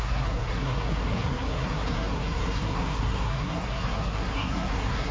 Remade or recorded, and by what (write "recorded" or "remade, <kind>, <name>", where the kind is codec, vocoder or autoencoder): remade, codec, SNAC